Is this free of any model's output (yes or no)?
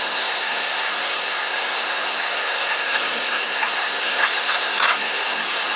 no